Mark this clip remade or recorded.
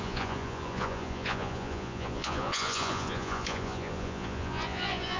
remade